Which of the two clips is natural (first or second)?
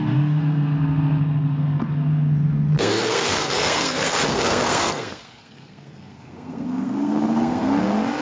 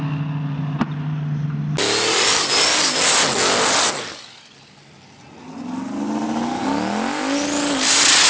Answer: second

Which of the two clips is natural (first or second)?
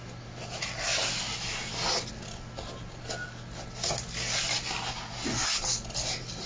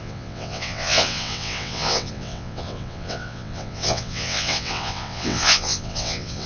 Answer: first